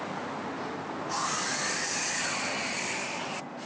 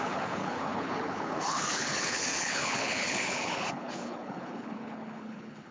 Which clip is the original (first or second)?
first